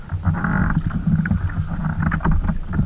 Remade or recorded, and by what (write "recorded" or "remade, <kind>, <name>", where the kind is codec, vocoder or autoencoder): recorded